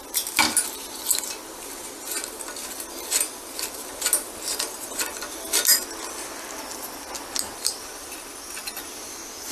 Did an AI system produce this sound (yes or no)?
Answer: no